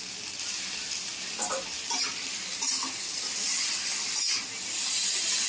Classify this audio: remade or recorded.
recorded